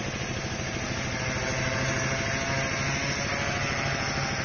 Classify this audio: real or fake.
real